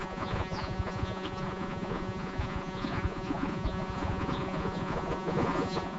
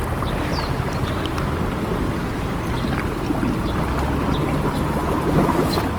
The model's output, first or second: first